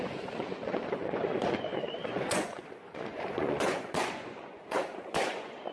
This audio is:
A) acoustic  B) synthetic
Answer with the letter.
B